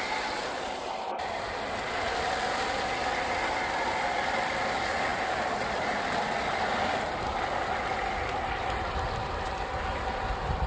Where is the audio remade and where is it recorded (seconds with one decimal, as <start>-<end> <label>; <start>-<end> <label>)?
0.0-10.7 recorded

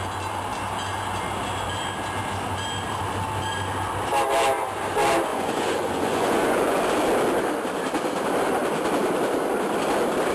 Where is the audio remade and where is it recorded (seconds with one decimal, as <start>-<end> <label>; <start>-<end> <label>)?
0.0-5.3 recorded; 5.3-6.8 remade; 6.8-10.3 recorded

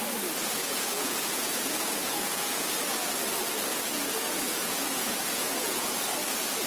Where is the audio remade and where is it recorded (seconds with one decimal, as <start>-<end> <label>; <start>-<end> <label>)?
0.0-0.6 recorded; 0.6-2.8 remade; 2.8-3.7 recorded; 3.7-5.9 remade; 5.9-6.7 recorded

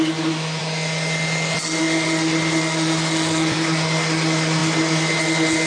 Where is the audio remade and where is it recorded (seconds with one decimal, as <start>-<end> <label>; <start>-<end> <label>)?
0.0-5.7 recorded